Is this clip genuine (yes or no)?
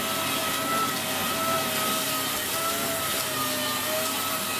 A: yes